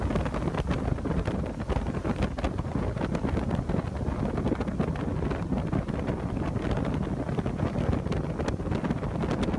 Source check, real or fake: real